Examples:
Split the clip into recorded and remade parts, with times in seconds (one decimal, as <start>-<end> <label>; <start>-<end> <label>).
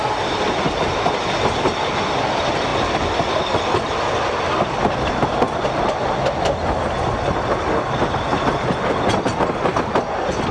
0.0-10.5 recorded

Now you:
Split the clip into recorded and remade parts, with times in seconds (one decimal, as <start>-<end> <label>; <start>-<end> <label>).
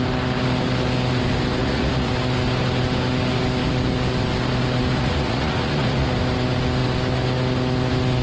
0.0-1.6 recorded; 1.6-2.1 remade; 2.1-5.0 recorded; 5.0-6.1 remade; 6.1-8.2 recorded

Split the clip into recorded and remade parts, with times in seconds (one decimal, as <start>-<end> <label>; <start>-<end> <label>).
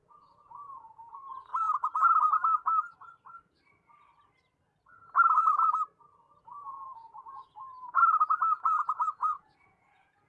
0.0-1.5 remade; 1.5-6.4 recorded; 6.4-8.0 remade; 8.0-8.7 recorded; 8.7-10.3 remade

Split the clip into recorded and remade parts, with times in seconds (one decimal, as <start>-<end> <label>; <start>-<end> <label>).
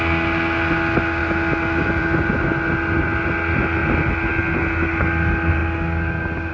0.0-6.5 recorded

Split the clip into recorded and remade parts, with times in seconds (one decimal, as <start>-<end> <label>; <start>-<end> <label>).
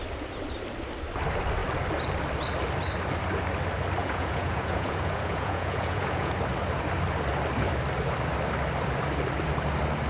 0.0-4.0 recorded; 4.0-6.3 remade; 6.3-10.1 recorded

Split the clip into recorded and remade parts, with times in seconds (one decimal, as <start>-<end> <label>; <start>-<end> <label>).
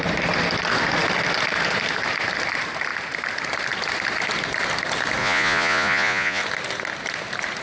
0.0-5.2 recorded; 5.2-6.4 remade; 6.4-7.6 recorded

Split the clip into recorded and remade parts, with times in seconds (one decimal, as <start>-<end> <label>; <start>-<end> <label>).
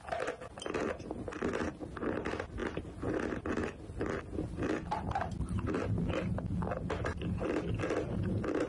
0.0-8.7 recorded